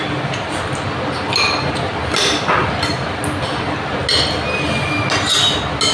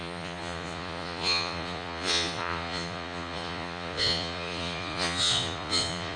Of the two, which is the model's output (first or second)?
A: second